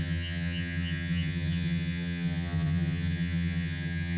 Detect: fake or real fake